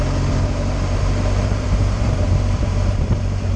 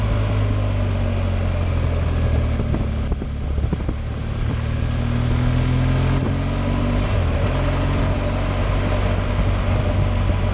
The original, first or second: second